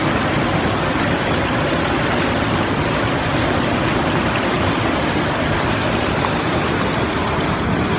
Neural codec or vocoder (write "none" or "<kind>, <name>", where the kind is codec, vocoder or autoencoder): none